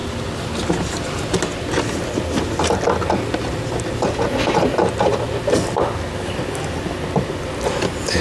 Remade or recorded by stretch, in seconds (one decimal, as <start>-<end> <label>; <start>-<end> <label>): 0.0-8.2 recorded

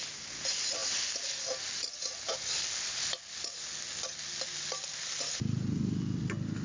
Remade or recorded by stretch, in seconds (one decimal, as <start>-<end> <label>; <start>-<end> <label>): 0.0-6.6 recorded

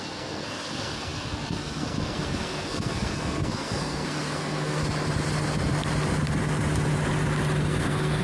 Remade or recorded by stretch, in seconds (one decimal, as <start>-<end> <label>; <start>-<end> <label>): 0.0-4.8 remade; 4.8-7.6 recorded; 7.6-8.2 remade

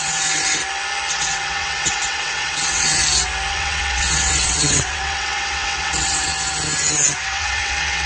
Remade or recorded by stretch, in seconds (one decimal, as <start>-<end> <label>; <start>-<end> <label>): 0.0-0.6 remade; 0.6-1.1 recorded; 1.1-3.0 remade; 3.0-3.5 recorded; 3.5-6.3 remade; 6.3-7.2 recorded; 7.2-8.1 remade